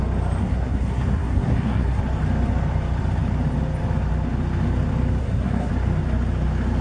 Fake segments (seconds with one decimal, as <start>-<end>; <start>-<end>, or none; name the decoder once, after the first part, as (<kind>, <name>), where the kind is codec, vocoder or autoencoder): 0.4-2.0 (codec, SNAC); 5.2-5.7